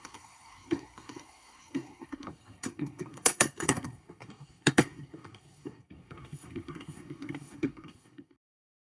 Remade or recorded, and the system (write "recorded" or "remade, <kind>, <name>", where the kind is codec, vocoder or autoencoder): remade, codec, SNAC